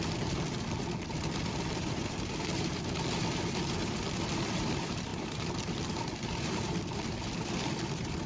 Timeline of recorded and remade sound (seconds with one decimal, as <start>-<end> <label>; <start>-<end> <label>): 0.0-8.3 remade